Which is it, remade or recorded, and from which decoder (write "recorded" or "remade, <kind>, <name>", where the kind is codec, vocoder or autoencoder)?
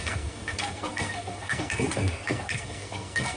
remade, codec, SNAC